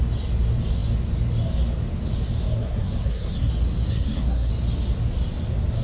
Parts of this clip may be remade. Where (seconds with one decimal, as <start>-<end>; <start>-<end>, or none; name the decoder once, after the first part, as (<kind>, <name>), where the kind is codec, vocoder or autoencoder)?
2.6-3.5 (codec, SNAC); 3.9-4.5